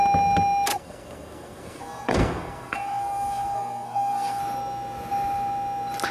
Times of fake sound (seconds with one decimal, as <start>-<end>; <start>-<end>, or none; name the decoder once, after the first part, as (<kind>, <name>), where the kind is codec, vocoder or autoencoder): 0.7-4.4 (codec, SNAC)